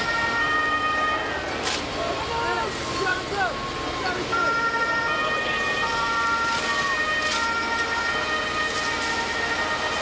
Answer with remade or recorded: recorded